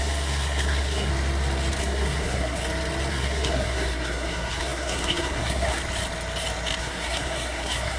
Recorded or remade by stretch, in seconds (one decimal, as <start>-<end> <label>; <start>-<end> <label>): 0.0-1.1 remade; 1.1-1.8 recorded; 1.8-2.6 remade; 2.6-3.1 recorded; 3.1-5.8 remade; 5.8-6.8 recorded; 6.8-8.0 remade